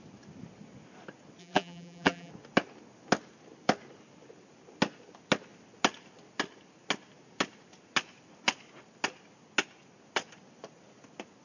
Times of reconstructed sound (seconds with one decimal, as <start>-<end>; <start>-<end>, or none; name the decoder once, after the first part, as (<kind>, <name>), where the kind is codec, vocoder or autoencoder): 1.4-2.3 (vocoder, BigVGAN v2)